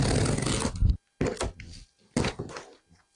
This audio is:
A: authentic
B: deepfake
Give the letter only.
A